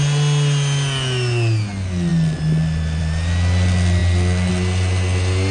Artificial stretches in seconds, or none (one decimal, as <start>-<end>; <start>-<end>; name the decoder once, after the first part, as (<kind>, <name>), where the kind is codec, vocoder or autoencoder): none